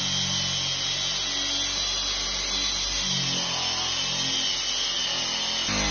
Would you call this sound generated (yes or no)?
no